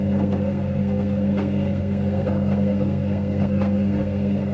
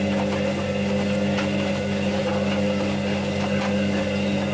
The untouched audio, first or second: second